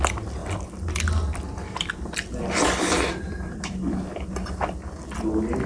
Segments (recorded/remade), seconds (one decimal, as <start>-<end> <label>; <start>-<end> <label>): 0.0-0.4 recorded; 0.4-3.8 remade; 3.8-5.7 recorded